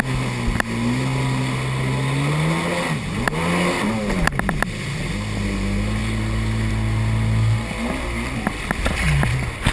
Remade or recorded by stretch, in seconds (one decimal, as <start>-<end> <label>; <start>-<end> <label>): 0.0-9.7 recorded